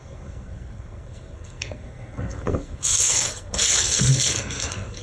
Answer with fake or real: fake